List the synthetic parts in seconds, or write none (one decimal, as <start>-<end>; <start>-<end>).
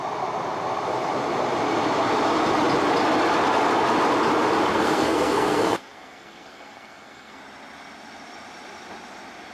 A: 4.7-7.4